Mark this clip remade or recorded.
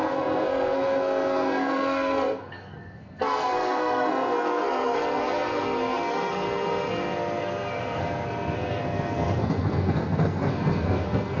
remade